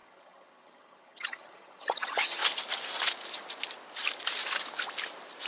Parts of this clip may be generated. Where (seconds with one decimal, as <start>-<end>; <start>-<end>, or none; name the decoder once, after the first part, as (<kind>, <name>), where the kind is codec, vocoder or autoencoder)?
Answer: 0.0-2.4 (vocoder, HiFi-GAN)